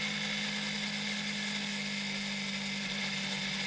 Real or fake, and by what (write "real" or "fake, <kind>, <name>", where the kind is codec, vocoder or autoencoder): real